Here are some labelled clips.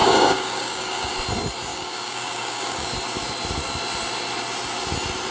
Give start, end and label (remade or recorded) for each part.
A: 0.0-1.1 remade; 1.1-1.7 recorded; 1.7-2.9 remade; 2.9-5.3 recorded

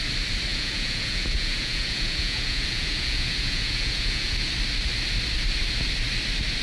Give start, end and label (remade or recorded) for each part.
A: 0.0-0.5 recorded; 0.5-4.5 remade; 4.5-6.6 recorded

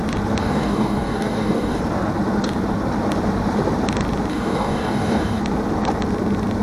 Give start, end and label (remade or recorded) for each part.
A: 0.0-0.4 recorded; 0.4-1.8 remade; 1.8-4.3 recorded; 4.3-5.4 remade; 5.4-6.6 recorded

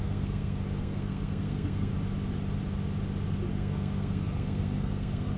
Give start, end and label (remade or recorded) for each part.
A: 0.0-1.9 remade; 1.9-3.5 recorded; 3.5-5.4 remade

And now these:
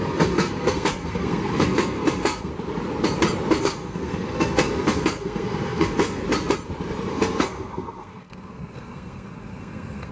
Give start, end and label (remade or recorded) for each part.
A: 0.0-2.5 remade; 2.5-3.6 recorded; 3.6-6.2 remade; 6.2-7.1 recorded; 7.1-10.1 remade